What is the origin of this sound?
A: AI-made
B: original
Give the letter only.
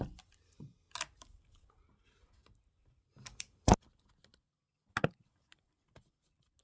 B